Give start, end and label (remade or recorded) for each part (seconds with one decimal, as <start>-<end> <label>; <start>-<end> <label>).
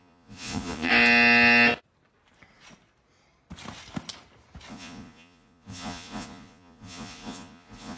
0.0-0.9 remade; 0.9-4.7 recorded; 4.7-8.0 remade